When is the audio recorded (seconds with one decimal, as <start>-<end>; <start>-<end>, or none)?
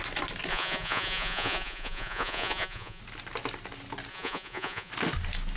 0.0-0.5; 3.0-4.1; 4.9-5.6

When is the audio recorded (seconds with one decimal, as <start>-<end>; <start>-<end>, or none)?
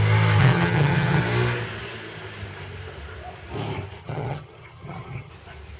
0.0-0.4; 1.2-4.0; 5.3-5.8